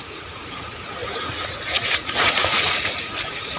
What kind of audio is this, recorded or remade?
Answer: remade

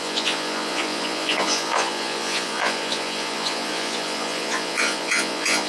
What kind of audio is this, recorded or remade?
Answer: remade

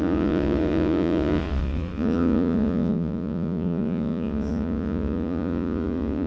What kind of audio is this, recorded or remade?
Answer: remade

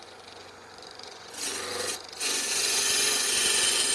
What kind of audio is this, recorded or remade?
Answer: remade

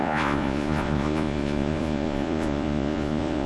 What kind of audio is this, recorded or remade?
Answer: remade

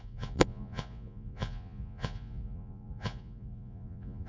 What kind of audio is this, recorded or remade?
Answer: remade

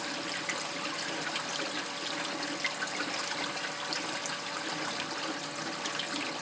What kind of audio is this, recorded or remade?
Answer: recorded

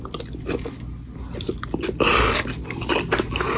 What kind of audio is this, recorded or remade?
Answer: recorded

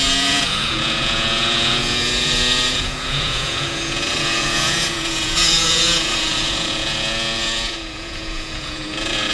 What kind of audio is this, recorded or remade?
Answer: remade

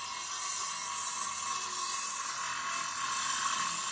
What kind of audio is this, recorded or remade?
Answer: recorded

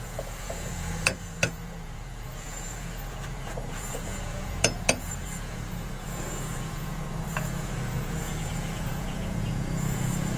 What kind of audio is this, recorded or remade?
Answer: remade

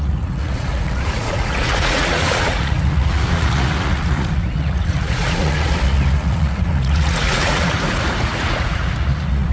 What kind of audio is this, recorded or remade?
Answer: remade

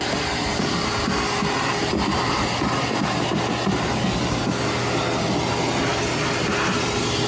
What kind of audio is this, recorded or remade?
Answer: recorded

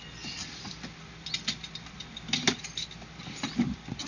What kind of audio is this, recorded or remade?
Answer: recorded